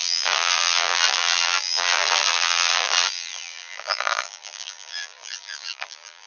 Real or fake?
fake